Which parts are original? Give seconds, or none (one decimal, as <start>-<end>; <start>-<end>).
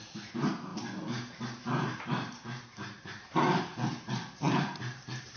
0.7-2.0